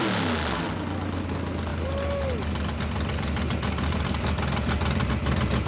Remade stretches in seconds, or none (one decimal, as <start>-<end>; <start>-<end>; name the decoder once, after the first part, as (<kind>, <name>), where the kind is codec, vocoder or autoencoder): none

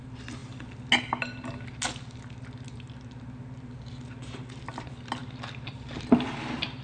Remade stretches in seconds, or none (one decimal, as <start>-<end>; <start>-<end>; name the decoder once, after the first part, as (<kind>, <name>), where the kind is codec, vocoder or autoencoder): none

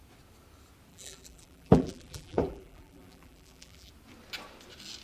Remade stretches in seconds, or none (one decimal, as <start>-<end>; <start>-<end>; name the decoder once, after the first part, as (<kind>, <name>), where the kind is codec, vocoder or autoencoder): 0.9-3.9 (vocoder, BigVGAN v2)